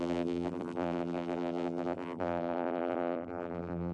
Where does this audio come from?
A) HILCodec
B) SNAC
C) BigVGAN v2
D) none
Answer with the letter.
C